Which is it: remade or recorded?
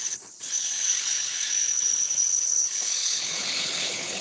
remade